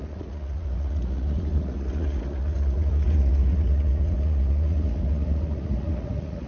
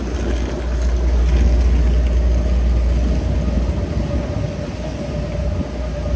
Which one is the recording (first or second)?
second